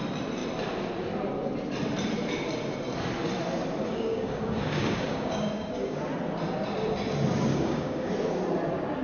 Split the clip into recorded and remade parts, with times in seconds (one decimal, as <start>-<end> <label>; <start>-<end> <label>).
0.0-3.8 recorded; 3.8-6.0 remade; 6.0-7.5 recorded; 7.5-8.1 remade; 8.1-9.0 recorded